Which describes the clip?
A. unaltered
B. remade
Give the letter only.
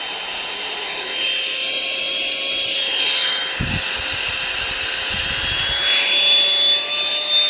A